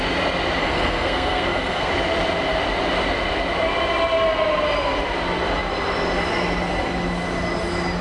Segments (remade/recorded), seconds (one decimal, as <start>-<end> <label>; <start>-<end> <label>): 0.0-0.6 recorded; 0.6-1.9 remade; 1.9-8.0 recorded